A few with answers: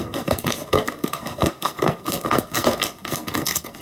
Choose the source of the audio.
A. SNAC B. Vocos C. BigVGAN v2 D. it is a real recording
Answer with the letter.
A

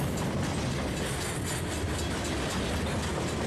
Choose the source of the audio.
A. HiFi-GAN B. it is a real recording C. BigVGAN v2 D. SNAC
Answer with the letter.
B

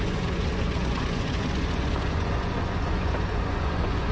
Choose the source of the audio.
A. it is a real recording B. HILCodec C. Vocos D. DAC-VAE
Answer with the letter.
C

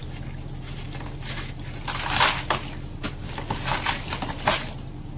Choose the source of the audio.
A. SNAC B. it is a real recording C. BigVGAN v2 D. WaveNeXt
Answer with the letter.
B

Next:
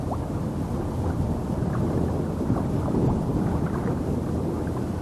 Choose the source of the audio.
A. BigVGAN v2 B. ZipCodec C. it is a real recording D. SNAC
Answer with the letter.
C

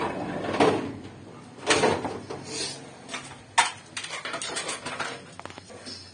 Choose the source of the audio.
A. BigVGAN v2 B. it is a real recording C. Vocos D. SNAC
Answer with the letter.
B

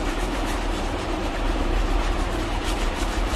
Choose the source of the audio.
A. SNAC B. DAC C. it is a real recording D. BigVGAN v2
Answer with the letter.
D